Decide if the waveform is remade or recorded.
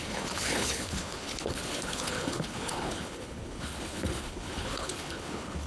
remade